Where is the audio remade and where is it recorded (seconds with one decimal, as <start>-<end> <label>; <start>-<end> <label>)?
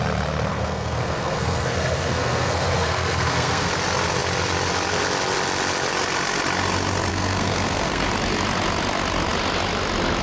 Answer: 0.0-0.5 recorded; 0.5-3.7 remade; 3.7-7.1 recorded; 7.1-8.1 remade; 8.1-10.2 recorded